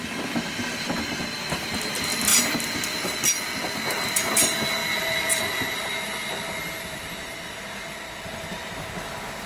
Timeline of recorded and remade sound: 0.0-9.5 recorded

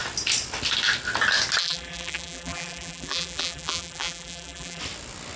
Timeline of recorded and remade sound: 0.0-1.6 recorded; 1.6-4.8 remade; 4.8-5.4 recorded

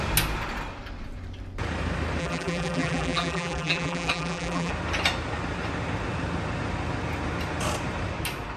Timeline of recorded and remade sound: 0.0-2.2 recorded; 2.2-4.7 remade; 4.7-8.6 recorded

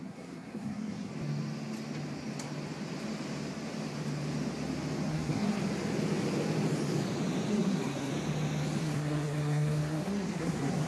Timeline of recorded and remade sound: 0.0-1.1 remade; 1.1-5.1 recorded; 5.1-5.6 remade; 5.6-7.5 recorded; 7.5-8.1 remade; 8.1-8.8 recorded; 8.8-10.9 remade

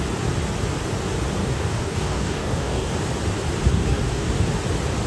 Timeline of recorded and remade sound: 0.0-1.4 recorded; 1.4-2.9 remade; 2.9-3.7 recorded; 3.7-4.3 remade; 4.3-5.1 recorded